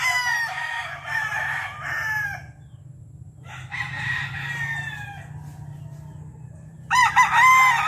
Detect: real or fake real